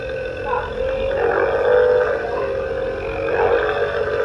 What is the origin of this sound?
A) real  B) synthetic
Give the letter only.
A